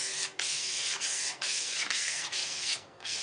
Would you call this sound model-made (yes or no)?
yes